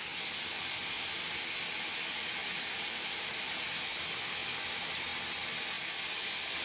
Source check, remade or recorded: recorded